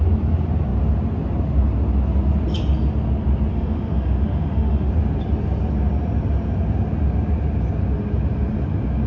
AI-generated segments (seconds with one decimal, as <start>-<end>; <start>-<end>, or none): 3.5-4.9